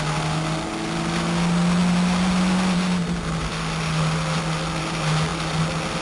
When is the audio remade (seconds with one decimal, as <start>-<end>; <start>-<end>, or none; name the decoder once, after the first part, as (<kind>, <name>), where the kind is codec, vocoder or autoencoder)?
none